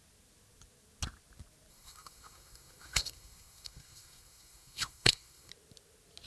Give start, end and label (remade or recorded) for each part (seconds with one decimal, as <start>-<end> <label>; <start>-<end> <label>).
0.0-1.7 recorded; 1.7-5.5 remade; 5.5-6.3 recorded